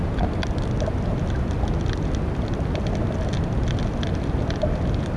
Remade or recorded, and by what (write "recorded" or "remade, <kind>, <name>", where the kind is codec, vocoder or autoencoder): recorded